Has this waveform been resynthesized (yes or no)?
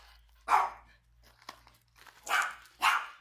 no